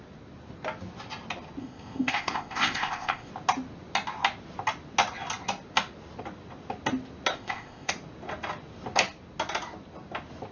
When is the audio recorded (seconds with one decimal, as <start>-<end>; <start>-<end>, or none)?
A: 0.0-1.6; 3.3-7.3; 7.9-10.5